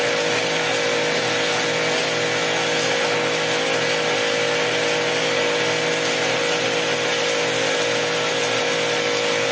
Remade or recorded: recorded